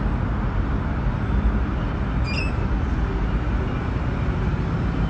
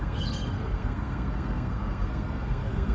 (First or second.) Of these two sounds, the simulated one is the second